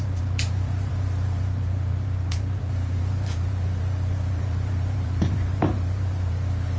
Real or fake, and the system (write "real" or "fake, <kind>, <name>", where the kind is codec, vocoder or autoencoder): fake, vocoder, BigVGAN v2